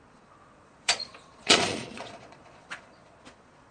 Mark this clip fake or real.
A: fake